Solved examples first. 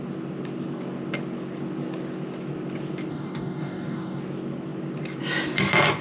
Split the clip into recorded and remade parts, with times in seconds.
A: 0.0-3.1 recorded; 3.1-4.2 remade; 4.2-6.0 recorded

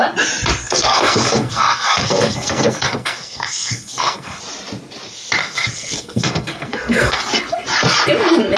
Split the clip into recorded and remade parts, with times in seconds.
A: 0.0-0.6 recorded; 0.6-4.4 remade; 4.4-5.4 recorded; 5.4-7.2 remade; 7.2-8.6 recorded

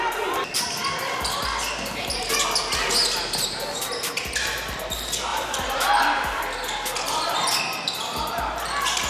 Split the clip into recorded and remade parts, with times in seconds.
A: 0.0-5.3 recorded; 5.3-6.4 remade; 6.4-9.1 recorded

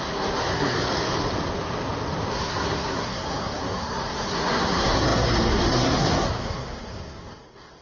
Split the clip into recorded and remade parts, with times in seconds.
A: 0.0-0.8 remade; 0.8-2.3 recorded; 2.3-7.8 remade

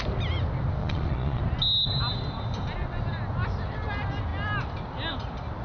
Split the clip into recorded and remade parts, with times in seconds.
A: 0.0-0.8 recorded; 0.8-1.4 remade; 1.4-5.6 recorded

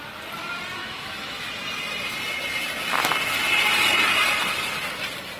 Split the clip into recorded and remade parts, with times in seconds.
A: 0.0-0.8 recorded; 0.8-1.5 remade; 1.5-5.4 recorded